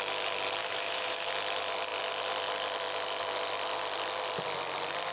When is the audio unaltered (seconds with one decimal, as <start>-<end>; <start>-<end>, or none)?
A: 0.0-0.6; 1.3-5.1